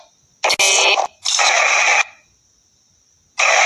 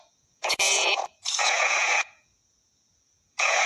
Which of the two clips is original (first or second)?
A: first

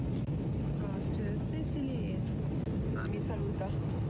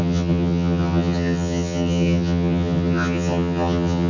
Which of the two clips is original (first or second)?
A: first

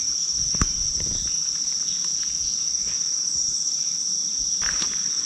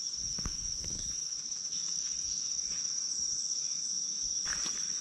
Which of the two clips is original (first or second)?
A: first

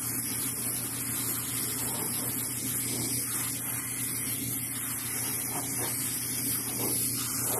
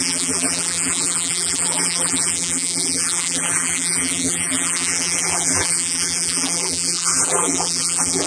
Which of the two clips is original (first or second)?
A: first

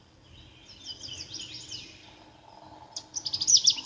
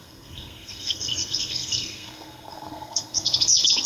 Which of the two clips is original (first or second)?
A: first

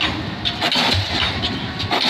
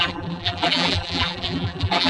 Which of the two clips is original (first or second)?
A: first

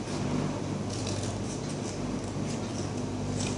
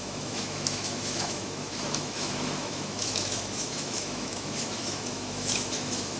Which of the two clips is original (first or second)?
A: first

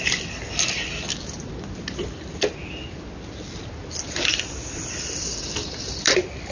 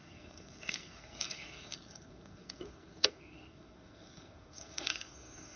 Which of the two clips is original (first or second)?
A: first